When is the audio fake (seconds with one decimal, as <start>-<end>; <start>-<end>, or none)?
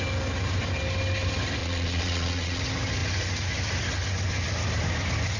1.6-2.6